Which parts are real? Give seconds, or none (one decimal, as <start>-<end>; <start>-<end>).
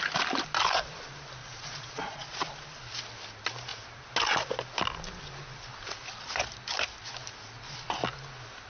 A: 0.0-1.4; 2.5-8.7